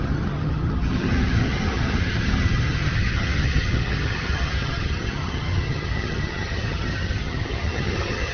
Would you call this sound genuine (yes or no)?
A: no